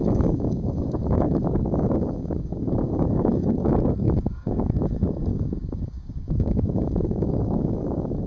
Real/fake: fake